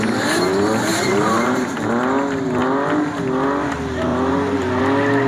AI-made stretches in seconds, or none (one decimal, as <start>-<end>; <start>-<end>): 0.9-1.9; 4.1-4.8